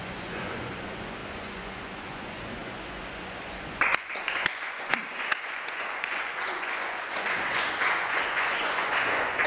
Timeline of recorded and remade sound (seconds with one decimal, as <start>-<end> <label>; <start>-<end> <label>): 0.0-9.5 remade